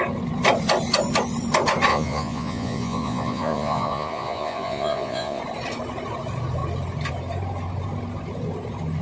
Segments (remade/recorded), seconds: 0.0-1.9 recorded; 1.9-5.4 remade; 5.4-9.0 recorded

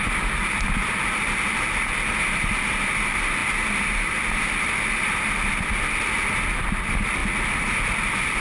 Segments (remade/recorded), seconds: 0.0-8.4 recorded

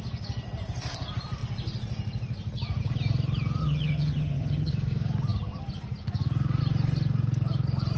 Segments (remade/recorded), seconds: 0.0-3.6 recorded; 3.6-4.7 remade; 4.7-8.0 recorded

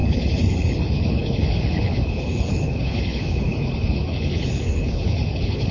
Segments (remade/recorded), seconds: 0.0-5.7 remade

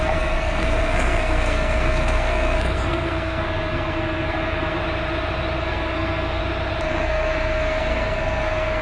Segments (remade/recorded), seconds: 0.0-4.8 remade; 4.8-5.6 recorded; 5.6-6.4 remade; 6.4-6.9 recorded; 6.9-8.8 remade

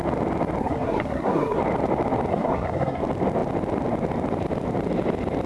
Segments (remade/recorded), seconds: 0.0-0.6 recorded; 0.6-1.6 remade; 1.6-2.3 recorded; 2.3-3.0 remade; 3.0-5.5 recorded

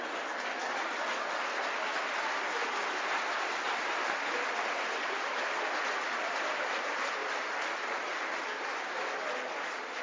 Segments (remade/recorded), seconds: 0.0-10.0 recorded

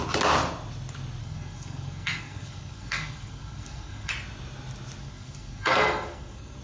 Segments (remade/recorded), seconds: 0.0-1.2 recorded; 1.2-4.1 remade; 4.1-5.0 recorded; 5.0-6.6 remade